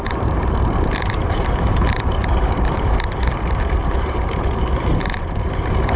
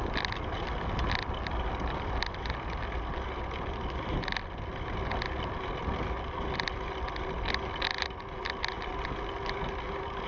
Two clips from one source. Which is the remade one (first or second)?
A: first